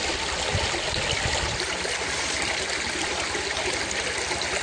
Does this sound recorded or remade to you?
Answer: recorded